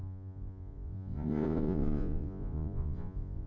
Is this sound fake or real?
fake